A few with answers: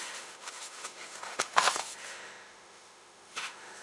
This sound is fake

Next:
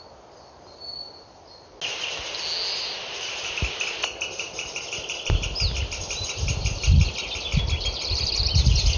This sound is real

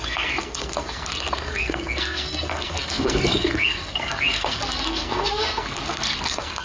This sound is fake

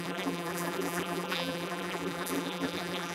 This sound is fake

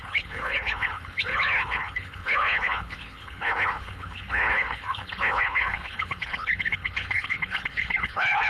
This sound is fake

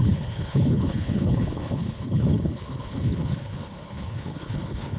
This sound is fake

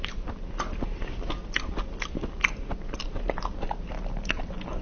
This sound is real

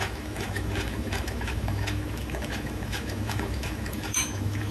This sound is fake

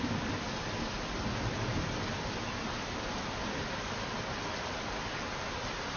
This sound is real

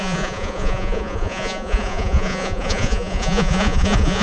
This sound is fake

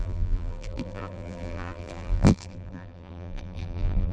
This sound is fake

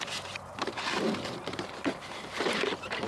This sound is fake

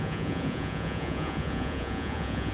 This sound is fake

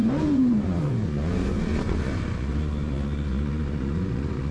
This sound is fake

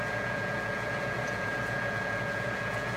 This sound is fake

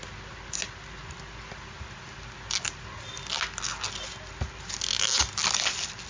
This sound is real